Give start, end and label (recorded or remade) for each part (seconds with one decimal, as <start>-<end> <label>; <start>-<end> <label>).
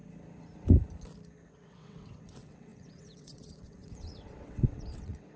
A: 0.0-1.5 recorded; 1.5-5.4 remade